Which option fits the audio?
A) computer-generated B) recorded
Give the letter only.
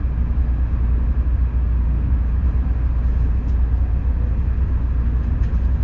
B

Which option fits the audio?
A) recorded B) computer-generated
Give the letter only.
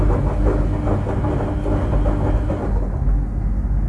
A